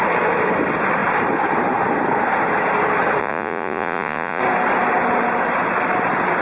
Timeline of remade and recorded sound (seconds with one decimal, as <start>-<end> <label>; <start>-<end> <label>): 0.0-3.2 recorded; 3.2-4.4 remade; 4.4-6.4 recorded